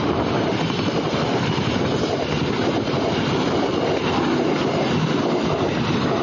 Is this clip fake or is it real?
real